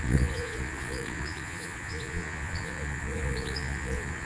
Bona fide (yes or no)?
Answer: no